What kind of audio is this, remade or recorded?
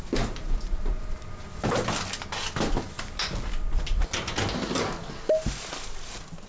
recorded